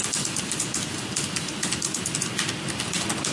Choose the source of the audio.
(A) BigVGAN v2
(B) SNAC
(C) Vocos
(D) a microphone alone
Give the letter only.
D